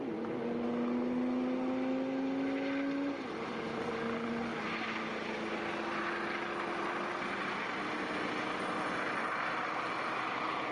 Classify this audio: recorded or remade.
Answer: recorded